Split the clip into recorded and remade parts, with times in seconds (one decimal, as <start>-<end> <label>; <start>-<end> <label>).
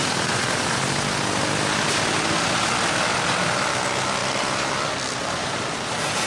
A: 0.0-0.8 remade; 0.8-5.4 recorded; 5.4-6.3 remade